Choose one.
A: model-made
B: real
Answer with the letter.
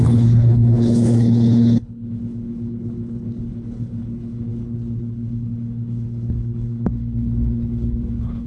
A